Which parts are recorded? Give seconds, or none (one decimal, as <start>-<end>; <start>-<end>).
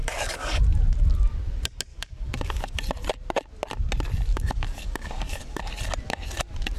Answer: 0.6-1.9; 2.8-4.3; 5.6-6.8